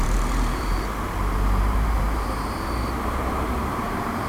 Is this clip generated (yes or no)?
yes